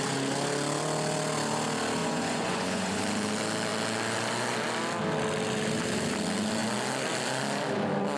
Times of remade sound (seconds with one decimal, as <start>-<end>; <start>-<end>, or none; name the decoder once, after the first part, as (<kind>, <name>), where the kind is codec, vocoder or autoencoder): 2.0-3.0 (vocoder, Vocos)